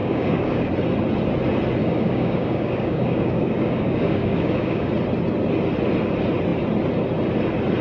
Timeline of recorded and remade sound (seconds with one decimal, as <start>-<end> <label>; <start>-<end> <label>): 0.0-0.7 remade; 0.7-1.8 recorded; 1.8-4.9 remade; 4.9-7.8 recorded